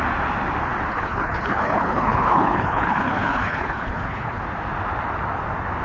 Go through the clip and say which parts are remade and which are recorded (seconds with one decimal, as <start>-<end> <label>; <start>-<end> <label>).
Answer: 0.0-0.9 recorded; 0.9-4.4 remade; 4.4-5.8 recorded